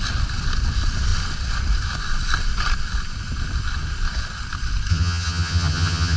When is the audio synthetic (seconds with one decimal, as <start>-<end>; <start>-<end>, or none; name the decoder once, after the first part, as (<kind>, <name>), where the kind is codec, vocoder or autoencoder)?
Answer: 4.9-6.2 (vocoder, HiFi-GAN)